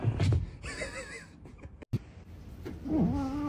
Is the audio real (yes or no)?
yes